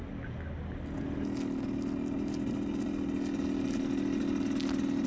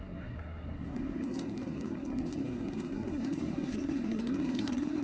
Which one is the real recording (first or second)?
first